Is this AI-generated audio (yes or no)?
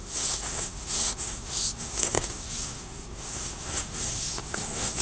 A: yes